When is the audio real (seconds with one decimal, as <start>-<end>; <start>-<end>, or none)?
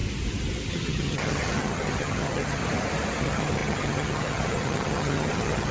0.0-0.7; 2.6-3.2